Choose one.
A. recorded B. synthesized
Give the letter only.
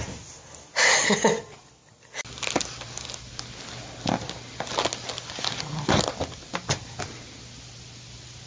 A